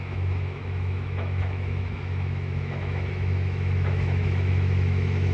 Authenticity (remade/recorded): remade